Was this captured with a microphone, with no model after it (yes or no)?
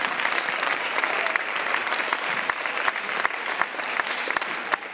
no